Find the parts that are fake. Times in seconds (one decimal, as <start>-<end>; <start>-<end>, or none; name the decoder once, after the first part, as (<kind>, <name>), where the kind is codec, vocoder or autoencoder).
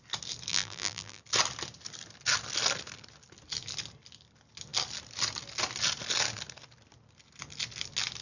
0.5-1.2 (vocoder, BigVGAN v2)